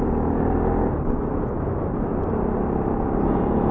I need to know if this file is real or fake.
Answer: real